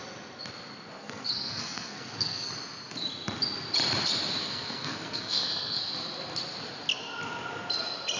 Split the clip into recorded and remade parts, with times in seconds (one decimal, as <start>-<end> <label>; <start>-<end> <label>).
0.0-1.0 recorded; 1.0-2.5 remade; 2.5-4.4 recorded; 4.4-5.8 remade; 5.8-8.2 recorded